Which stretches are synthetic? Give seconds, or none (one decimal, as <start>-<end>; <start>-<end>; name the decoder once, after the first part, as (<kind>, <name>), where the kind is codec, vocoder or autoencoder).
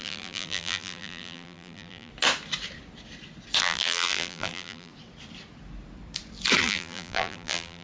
0.0-2.1 (vocoder, BigVGAN v2); 3.6-4.9; 6.6-7.8